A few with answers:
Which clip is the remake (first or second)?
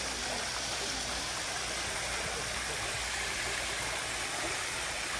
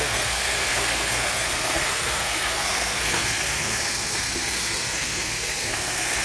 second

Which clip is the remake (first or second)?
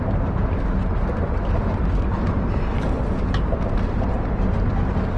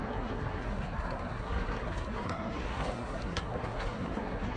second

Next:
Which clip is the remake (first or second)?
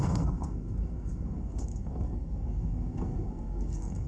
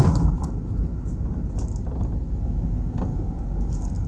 first